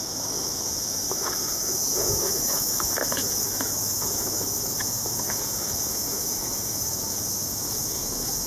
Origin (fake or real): fake